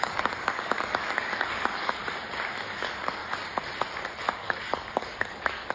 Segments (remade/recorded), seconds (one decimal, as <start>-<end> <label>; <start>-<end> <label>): 0.0-2.0 remade; 2.0-2.5 recorded; 2.5-3.2 remade; 3.2-4.3 recorded; 4.3-5.7 remade